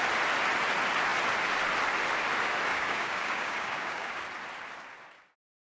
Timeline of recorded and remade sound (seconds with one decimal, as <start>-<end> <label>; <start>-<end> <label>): 0.0-2.7 recorded; 2.7-4.2 remade; 4.2-5.8 recorded